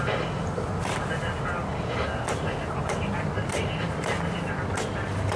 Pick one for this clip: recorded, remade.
recorded